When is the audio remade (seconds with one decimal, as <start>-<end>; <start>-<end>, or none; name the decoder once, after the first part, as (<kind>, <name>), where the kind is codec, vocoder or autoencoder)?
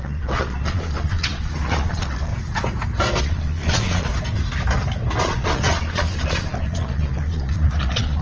0.0-2.3 (vocoder, Vocos); 3.2-4.1; 5.2-8.2